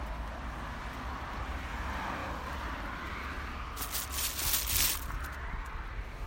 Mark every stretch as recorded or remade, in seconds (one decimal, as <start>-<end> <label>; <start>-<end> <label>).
0.0-6.3 recorded